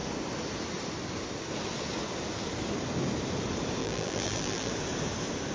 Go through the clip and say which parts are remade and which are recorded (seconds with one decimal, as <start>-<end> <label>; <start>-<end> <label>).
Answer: 0.0-3.8 recorded; 3.8-4.7 remade; 4.7-5.5 recorded